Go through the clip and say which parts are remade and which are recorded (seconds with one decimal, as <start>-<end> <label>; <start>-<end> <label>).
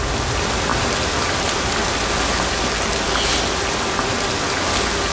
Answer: 0.0-5.1 recorded